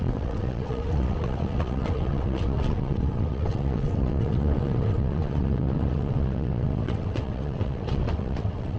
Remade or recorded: remade